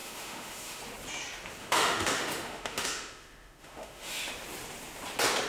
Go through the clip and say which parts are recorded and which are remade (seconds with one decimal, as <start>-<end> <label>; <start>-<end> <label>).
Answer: 0.0-0.8 remade; 0.8-1.6 recorded; 1.6-4.3 remade; 4.3-5.5 recorded